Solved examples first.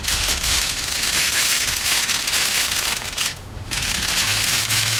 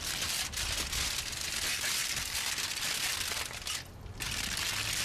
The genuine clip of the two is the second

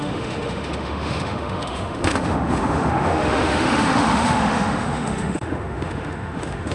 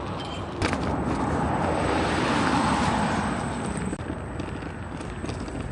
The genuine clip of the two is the second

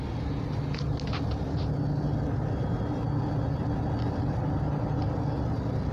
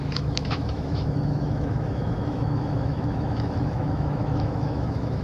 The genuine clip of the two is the first